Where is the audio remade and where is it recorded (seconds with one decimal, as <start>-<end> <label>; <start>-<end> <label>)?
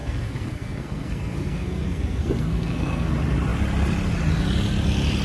0.0-3.1 remade; 3.1-5.2 recorded